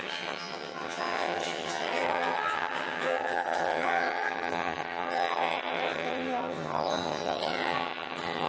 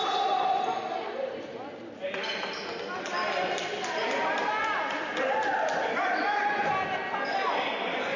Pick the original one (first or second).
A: second